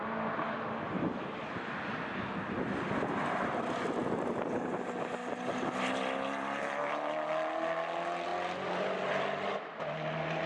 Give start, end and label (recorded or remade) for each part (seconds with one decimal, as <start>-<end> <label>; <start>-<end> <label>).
0.0-10.5 recorded